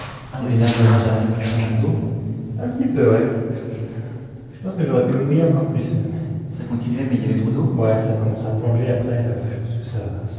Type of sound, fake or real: real